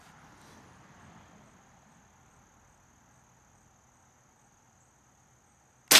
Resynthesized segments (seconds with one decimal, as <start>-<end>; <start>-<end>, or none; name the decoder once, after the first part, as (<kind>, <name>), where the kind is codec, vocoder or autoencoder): none